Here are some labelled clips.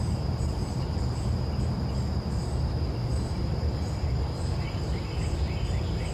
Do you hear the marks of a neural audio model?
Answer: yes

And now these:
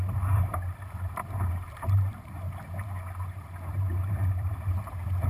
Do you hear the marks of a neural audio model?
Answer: yes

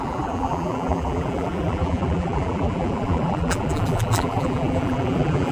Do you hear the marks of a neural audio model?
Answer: yes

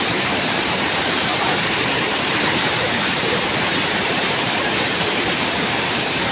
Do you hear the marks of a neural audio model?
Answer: yes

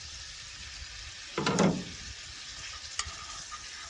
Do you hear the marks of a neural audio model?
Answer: no